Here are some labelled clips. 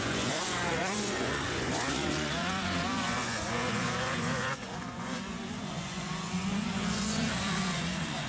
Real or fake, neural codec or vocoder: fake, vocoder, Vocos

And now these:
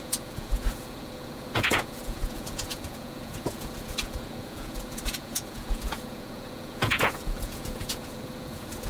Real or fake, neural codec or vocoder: fake, vocoder, Vocos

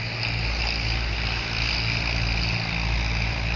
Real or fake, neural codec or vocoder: real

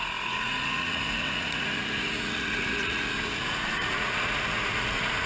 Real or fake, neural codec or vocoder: fake, vocoder, Vocos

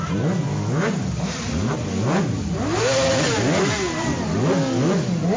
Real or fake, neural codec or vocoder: real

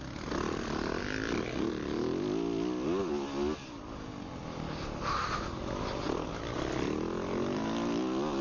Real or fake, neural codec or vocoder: real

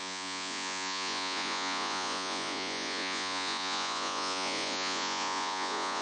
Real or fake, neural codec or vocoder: fake, vocoder, Vocos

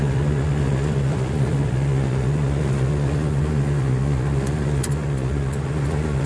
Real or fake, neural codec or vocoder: fake, vocoder, Vocos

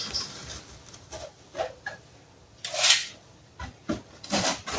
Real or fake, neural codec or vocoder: real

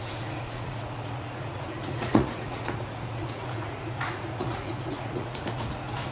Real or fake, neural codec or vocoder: fake, vocoder, Vocos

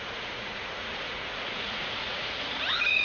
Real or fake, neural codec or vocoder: fake, vocoder, Vocos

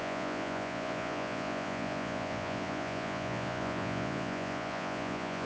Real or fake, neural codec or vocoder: fake, vocoder, Vocos